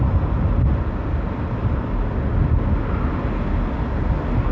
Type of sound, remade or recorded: recorded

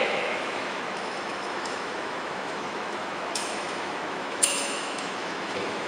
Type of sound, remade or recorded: remade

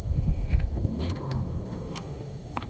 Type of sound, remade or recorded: remade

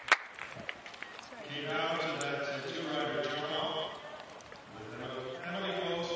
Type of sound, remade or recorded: recorded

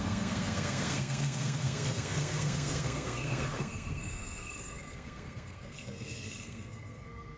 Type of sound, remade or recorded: remade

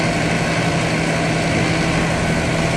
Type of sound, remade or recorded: recorded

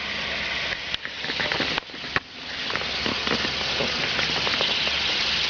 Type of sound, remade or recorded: recorded